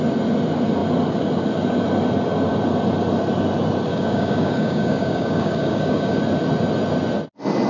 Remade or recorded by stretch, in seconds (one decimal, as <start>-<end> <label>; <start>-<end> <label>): 0.0-3.9 recorded; 3.9-6.2 remade; 6.2-7.7 recorded